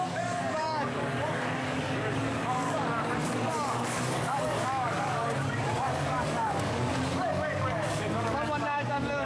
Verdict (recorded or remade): remade